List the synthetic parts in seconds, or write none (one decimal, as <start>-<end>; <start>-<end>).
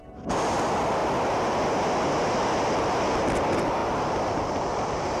none